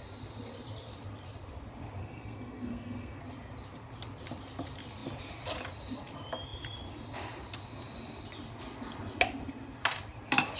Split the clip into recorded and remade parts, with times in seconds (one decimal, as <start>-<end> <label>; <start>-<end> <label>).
0.0-2.0 recorded; 2.0-3.2 remade; 3.2-10.6 recorded

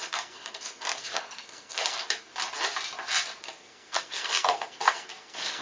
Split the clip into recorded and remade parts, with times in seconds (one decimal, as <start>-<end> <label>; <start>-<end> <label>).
0.0-2.3 remade; 2.3-3.4 recorded; 3.4-5.6 remade

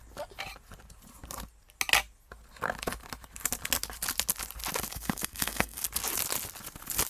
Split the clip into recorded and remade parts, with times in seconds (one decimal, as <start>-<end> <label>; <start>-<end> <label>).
0.0-4.9 recorded; 4.9-5.8 remade; 5.8-7.1 recorded